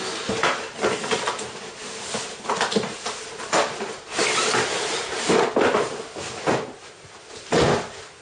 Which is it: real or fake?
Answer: real